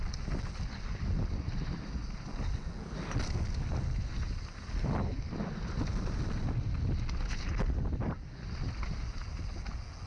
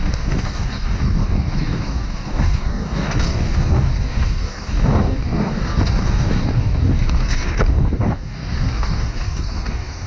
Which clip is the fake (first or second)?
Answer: second